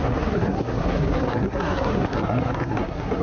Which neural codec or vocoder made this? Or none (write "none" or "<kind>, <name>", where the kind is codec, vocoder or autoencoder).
codec, SNAC